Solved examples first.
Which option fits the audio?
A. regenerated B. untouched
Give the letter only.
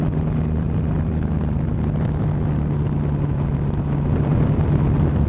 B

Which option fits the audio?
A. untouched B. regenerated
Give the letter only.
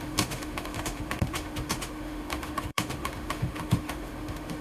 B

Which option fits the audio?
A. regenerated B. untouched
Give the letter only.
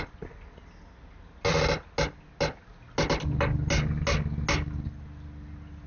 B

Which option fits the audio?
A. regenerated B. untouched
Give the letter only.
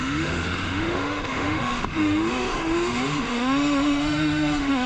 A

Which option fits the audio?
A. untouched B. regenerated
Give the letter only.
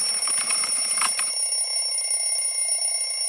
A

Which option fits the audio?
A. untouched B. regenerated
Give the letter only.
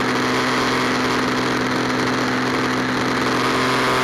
A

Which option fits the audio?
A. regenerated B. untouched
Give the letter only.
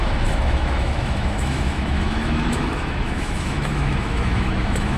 A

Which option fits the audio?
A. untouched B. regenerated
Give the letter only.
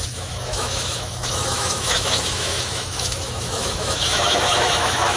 B